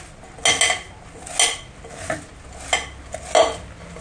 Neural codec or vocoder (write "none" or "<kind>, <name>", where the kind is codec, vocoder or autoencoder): none